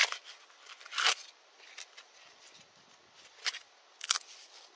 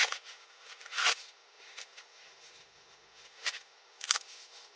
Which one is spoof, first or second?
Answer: second